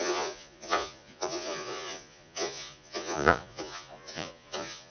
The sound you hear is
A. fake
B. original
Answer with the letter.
A